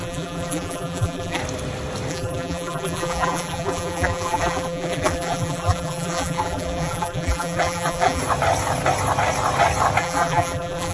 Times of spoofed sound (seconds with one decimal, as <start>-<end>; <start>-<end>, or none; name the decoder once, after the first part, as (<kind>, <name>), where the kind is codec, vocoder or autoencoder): 0.0-1.4 (vocoder, BigVGAN v2); 2.1-8.2; 10.0-10.9